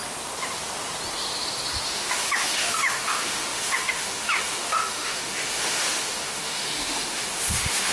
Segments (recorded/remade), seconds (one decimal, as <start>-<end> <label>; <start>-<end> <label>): 0.0-1.9 recorded; 1.9-7.9 remade